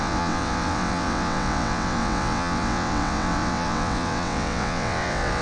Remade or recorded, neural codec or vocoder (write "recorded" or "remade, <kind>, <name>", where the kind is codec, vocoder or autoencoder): remade, vocoder, WaveNeXt